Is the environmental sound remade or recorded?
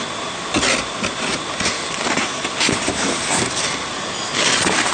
recorded